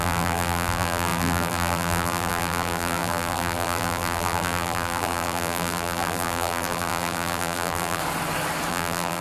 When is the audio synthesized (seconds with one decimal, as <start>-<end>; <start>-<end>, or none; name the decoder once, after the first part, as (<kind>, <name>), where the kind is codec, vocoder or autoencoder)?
0.0-8.0 (vocoder, BigVGAN v2); 8.7-9.2